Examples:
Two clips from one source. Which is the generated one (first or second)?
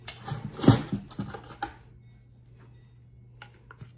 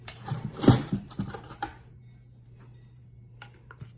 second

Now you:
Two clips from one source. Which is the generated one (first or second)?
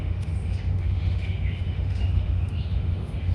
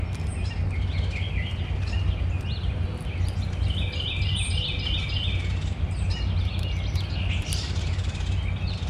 first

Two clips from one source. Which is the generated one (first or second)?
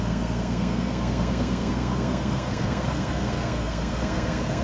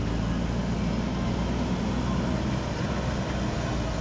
first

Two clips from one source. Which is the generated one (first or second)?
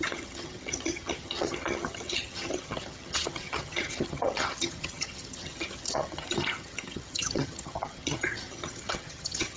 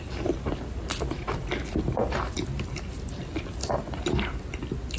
first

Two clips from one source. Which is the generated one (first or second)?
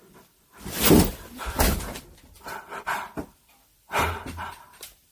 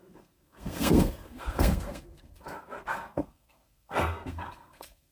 second